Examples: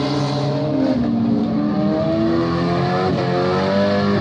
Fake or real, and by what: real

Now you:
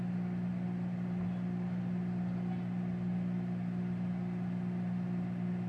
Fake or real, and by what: real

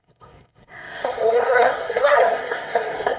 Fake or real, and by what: fake, codec, SNAC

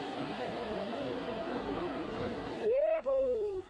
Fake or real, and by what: fake, codec, SNAC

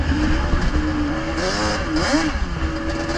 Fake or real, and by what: real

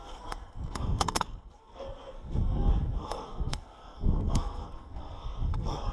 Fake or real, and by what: fake, codec, SNAC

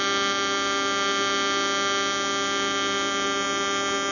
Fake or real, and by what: real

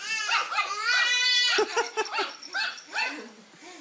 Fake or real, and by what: real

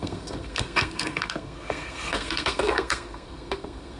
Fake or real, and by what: fake, codec, SNAC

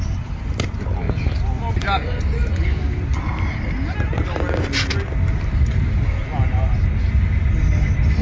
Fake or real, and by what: real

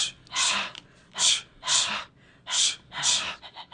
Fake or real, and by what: real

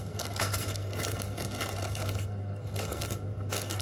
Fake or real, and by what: fake, codec, SNAC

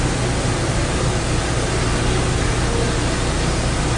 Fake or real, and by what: real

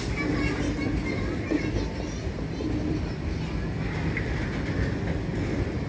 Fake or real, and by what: real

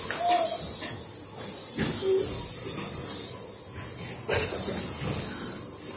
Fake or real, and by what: real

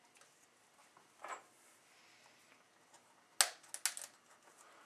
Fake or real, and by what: real